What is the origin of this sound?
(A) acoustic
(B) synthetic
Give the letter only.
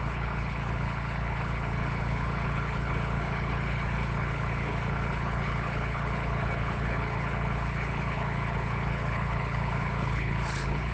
B